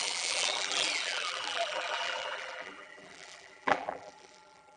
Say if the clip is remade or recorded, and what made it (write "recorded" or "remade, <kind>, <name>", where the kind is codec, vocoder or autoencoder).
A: remade, vocoder, BigVGAN v2